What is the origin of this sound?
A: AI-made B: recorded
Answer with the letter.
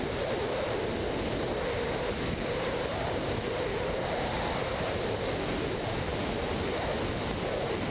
B